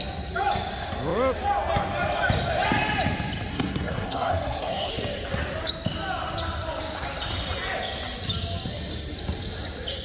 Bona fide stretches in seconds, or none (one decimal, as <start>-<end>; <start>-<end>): 0.0-3.5; 4.9-10.0